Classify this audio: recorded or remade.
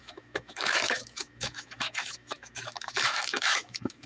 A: remade